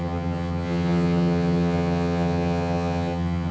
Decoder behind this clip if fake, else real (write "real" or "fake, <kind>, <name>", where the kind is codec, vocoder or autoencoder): fake, vocoder, HiFi-GAN